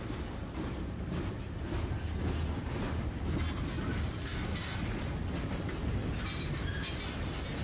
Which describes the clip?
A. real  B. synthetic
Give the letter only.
A